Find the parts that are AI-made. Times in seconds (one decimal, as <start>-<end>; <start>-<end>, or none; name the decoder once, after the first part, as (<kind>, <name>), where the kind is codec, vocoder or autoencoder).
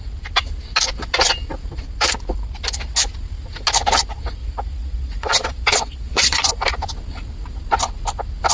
4.4-6.5 (vocoder, Vocos)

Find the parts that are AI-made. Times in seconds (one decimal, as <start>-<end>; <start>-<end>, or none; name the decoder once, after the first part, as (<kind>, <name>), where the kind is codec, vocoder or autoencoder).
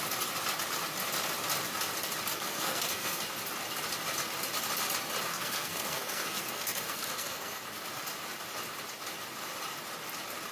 2.3-3.2 (codec, SNAC); 5.3-7.6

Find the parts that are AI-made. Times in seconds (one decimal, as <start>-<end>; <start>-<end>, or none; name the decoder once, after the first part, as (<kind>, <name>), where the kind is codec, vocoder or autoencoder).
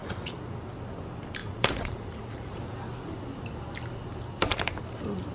0.0-0.5 (vocoder, Vocos); 1.4-2.6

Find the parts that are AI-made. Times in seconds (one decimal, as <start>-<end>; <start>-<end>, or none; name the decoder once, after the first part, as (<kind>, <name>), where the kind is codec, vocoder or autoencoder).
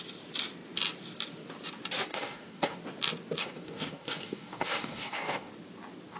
2.1-2.8 (codec, DAC); 3.4-5.5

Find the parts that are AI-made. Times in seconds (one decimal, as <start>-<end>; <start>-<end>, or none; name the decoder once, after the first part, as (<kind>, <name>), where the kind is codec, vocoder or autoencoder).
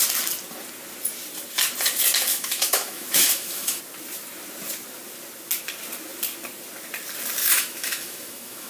2.3-3.8 (autoencoder, DAC-VAE); 7.4-8.7